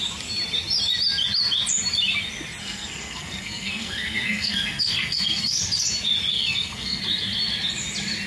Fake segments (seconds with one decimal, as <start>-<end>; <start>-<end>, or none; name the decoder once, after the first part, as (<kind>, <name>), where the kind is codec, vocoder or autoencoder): 2.6-5.6 (codec, SNAC); 6.3-7.0